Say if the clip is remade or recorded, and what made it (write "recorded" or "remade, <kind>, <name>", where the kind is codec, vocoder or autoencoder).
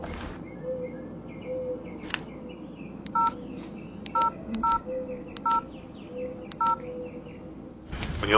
recorded